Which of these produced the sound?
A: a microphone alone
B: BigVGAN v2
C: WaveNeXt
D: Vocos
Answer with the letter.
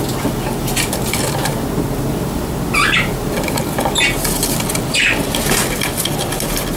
A